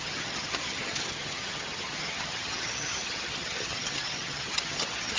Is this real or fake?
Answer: fake